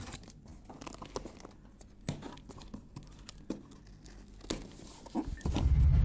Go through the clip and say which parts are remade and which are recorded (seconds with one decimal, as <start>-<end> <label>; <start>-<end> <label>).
0.0-6.0 recorded